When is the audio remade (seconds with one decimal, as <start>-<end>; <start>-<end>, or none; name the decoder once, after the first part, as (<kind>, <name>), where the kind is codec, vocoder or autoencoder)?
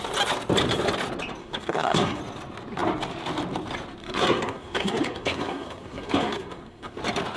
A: 1.4-2.2 (codec, SNAC); 4.0-7.0